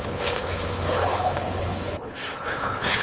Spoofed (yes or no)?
yes